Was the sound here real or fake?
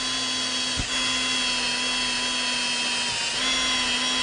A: real